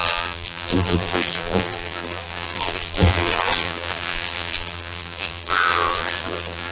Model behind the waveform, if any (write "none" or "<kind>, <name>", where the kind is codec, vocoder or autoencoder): vocoder, BigVGAN v2